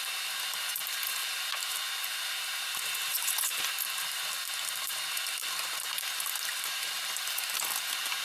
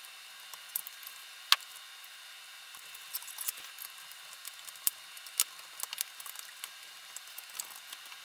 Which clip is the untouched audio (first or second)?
second